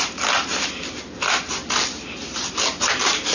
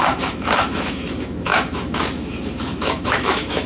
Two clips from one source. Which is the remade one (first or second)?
second